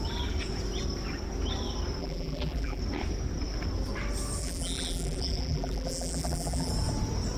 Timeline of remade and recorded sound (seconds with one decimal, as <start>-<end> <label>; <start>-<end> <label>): 0.0-2.0 recorded; 2.0-2.8 remade; 2.8-4.4 recorded; 4.4-6.7 remade; 6.7-7.4 recorded